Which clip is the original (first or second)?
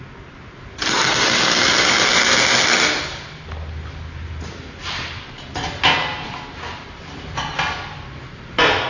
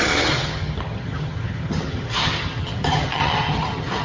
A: first